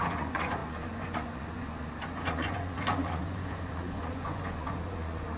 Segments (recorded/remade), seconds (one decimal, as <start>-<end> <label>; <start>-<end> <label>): 0.0-5.4 remade